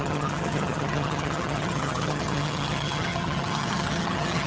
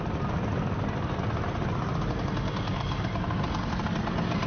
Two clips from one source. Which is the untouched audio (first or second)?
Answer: second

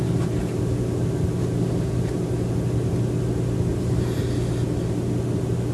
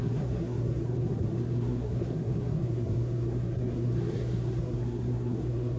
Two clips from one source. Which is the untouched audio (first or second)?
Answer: first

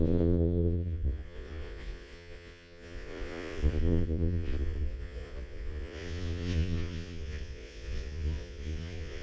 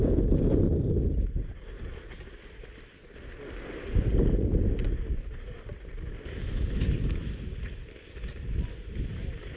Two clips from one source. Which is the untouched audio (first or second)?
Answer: second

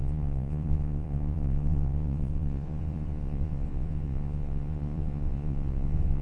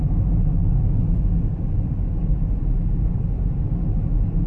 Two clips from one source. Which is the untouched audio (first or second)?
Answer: second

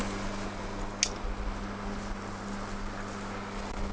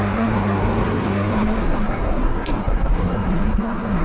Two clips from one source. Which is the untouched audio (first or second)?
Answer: first